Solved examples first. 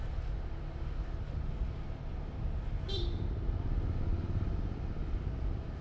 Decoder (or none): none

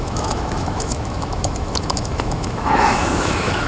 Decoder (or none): autoencoder, DAC-VAE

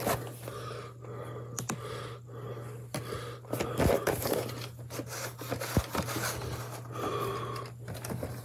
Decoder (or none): none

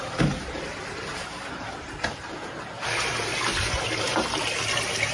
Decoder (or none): none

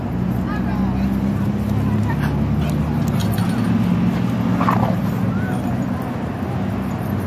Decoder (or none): none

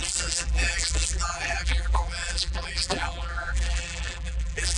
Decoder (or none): vocoder, BigVGAN v2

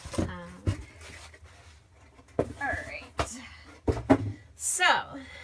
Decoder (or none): none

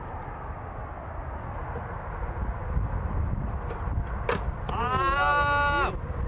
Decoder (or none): none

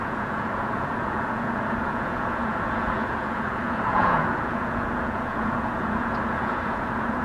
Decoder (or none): vocoder, Vocos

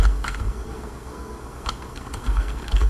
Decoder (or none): codec, SNAC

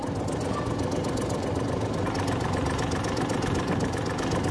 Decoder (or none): none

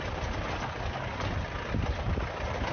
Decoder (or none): none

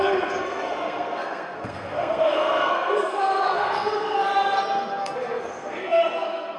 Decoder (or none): codec, SNAC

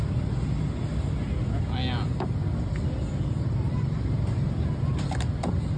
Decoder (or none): none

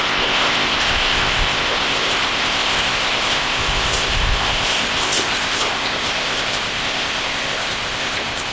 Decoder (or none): codec, ZipCodec